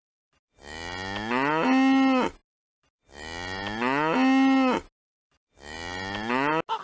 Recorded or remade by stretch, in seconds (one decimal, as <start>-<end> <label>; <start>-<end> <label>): 0.0-6.8 recorded